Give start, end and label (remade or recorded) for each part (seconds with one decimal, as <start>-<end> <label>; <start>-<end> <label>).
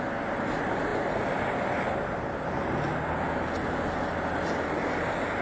0.0-5.4 recorded